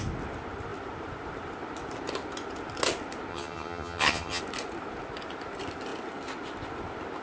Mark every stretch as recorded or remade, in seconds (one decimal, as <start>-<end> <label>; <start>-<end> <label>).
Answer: 0.0-3.3 recorded; 3.3-4.4 remade; 4.4-7.2 recorded

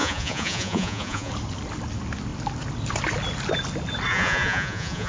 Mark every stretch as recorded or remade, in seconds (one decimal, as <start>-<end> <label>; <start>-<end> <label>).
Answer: 0.0-1.3 remade; 1.3-4.1 recorded; 4.1-5.1 remade

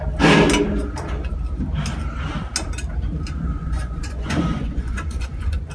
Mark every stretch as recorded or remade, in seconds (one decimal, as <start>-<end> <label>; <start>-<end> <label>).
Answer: 0.0-3.5 recorded; 3.5-5.7 remade

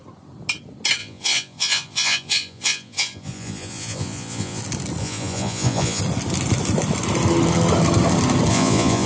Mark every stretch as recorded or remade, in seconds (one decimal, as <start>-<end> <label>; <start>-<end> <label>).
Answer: 0.0-1.0 recorded; 1.0-4.6 remade; 4.6-5.0 recorded; 5.0-6.0 remade; 6.0-8.5 recorded; 8.5-9.1 remade

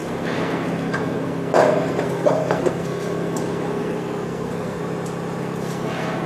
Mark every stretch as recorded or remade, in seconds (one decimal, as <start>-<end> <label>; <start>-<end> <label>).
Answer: 0.0-4.8 remade; 4.8-5.4 recorded; 5.4-6.3 remade

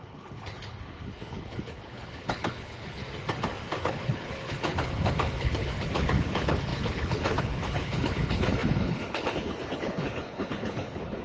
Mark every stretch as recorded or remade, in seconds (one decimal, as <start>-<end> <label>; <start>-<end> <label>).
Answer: 0.0-3.0 remade; 3.0-3.8 recorded; 3.8-11.2 remade